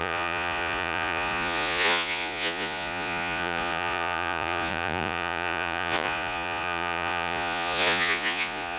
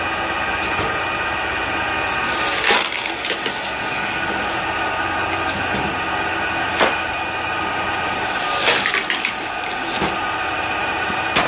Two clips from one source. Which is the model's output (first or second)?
first